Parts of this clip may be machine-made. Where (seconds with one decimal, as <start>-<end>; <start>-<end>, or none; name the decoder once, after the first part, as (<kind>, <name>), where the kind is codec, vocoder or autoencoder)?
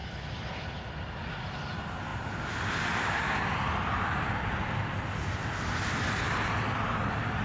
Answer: none